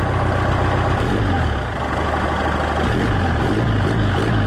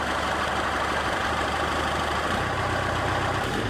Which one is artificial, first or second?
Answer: second